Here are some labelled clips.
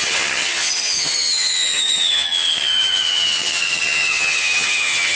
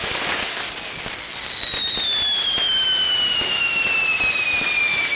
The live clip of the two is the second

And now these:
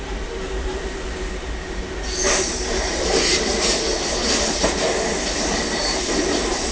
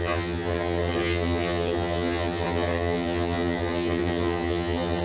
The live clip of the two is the first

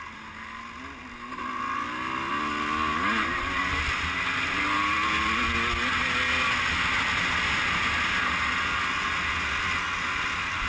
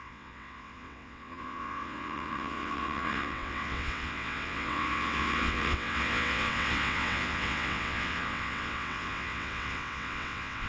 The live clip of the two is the first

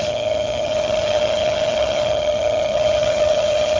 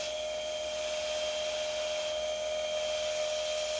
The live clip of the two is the second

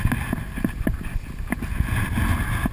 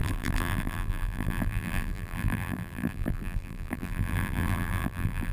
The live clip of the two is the first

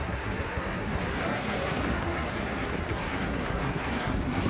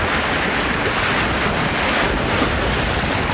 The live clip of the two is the second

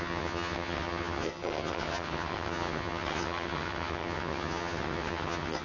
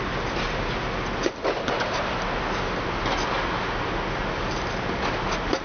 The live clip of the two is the second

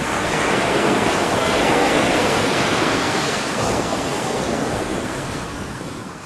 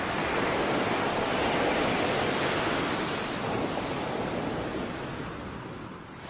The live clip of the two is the second